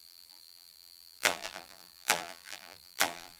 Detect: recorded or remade remade